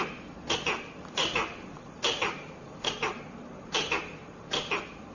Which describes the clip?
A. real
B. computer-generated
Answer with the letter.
B